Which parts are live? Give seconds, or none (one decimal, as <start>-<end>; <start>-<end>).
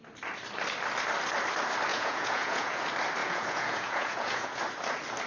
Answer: 0.0-1.9; 2.8-3.2; 4.6-5.3